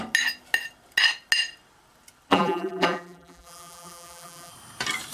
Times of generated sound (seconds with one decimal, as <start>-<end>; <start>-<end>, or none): 2.3-4.5